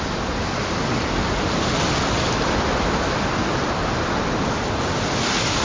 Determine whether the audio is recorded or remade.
recorded